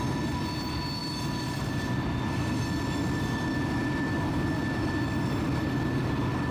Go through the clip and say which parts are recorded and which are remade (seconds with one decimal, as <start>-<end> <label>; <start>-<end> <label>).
0.0-6.5 recorded